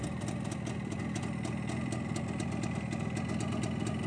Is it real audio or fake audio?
real